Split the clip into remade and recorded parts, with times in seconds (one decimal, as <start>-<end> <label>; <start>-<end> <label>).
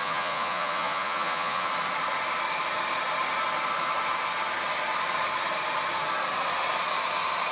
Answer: 0.0-1.7 remade; 1.7-7.5 recorded